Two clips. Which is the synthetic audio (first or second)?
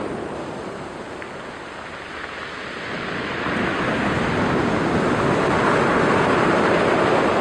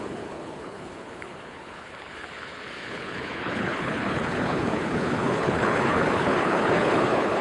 second